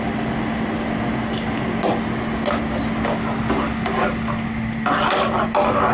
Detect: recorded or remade recorded